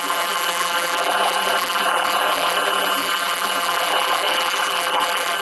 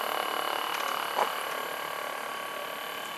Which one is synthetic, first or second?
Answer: first